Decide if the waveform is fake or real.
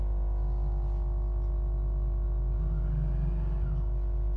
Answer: real